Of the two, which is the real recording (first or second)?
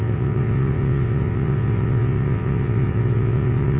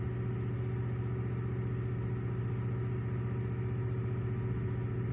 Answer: second